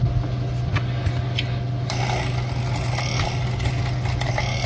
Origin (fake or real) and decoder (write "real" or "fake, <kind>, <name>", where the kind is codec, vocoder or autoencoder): real